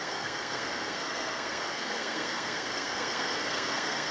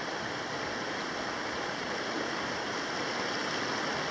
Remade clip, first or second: first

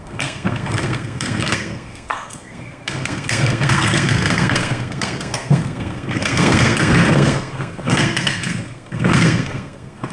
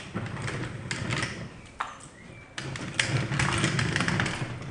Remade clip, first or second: first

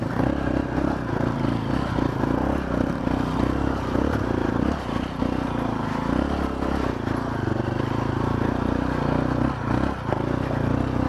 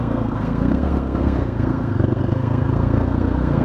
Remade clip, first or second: second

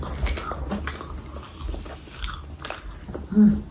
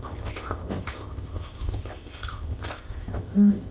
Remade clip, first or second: second